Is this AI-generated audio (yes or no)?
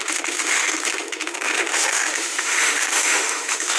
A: yes